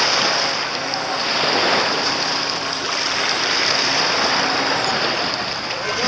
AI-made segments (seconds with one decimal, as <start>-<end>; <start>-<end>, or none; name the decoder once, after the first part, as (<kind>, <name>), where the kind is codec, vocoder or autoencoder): 1.2-4.9 (vocoder, BigVGAN v2)